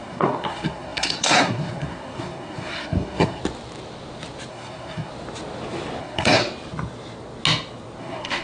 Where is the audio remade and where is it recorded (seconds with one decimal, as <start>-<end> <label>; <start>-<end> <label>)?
0.0-3.4 remade; 3.4-4.5 recorded; 4.5-5.1 remade; 5.1-6.0 recorded; 6.0-6.4 remade; 6.4-8.0 recorded; 8.0-8.4 remade